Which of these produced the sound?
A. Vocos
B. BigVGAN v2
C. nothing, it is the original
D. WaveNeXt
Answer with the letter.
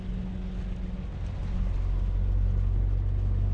C